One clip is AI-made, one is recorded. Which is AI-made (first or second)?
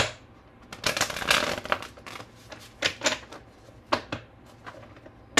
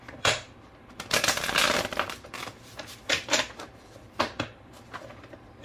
second